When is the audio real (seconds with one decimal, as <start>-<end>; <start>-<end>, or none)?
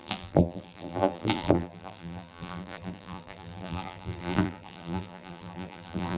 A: none